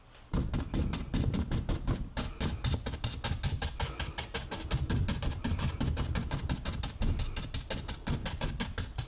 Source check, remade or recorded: recorded